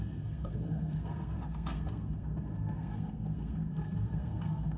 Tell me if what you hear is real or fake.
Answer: fake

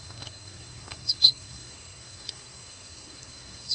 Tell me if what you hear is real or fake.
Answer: fake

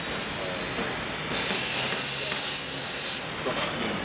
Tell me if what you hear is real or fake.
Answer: real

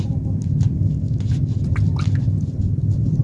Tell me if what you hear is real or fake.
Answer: real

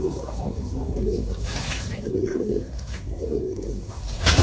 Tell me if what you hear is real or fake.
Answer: fake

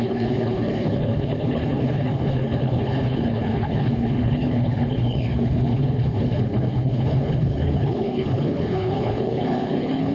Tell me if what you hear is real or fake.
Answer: fake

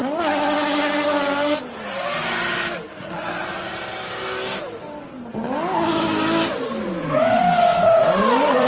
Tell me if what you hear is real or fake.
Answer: real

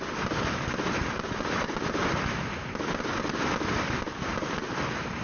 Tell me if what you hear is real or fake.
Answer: real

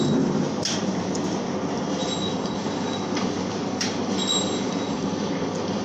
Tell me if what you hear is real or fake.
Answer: real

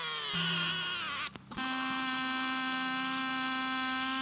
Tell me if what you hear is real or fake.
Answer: real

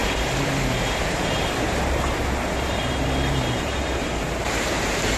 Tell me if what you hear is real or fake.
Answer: fake